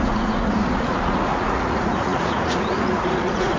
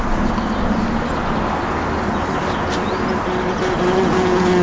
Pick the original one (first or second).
second